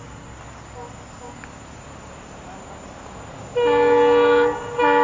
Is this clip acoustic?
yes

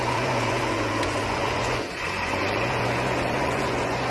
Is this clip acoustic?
no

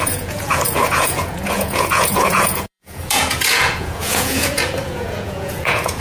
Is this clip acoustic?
no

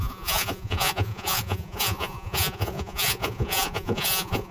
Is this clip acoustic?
no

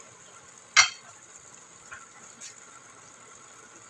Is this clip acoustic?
yes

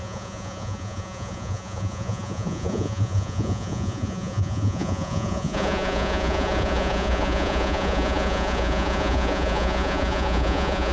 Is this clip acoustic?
no